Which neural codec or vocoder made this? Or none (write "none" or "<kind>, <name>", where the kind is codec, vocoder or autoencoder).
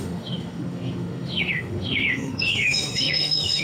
autoencoder, DAC-VAE